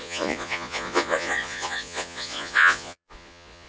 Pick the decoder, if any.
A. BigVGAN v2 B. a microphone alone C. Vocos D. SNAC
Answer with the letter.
C